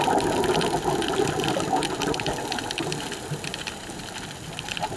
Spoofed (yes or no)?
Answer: no